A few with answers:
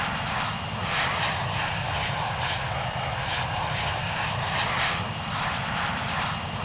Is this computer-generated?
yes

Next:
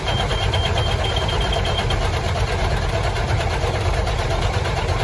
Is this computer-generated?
no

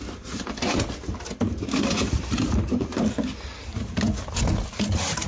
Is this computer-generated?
no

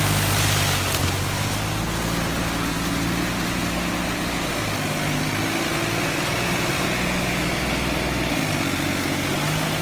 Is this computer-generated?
no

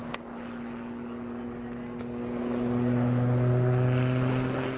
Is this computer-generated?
no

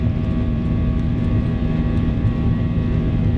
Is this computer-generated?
yes